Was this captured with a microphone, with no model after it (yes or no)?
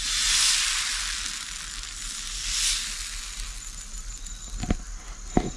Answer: yes